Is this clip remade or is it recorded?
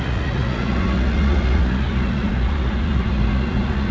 remade